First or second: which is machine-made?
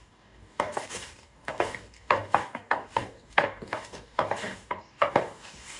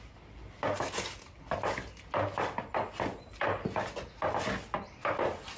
first